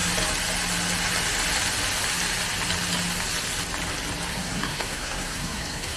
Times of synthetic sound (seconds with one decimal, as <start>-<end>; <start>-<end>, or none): 4.3-6.0

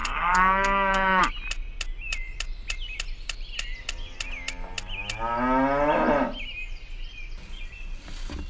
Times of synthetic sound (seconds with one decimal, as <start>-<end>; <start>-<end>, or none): 0.0-1.2

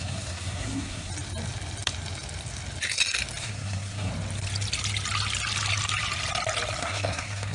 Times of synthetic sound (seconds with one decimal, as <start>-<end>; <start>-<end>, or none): 0.0-1.1; 3.4-4.1; 6.8-7.5

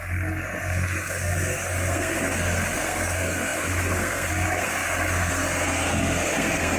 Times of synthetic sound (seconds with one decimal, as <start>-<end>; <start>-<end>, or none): 0.0-6.8

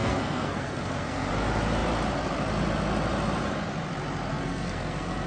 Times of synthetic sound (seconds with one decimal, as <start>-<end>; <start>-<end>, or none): 0.0-1.3; 4.3-5.3

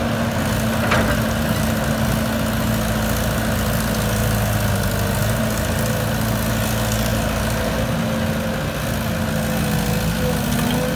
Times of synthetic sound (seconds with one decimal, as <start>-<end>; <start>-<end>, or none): none

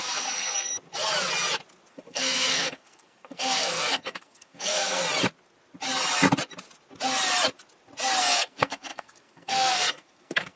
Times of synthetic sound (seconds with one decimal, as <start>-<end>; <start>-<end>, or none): 0.0-0.7; 1.9-5.0; 8.2-10.6

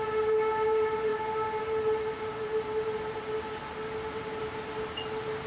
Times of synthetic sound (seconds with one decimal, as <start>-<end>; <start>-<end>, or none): none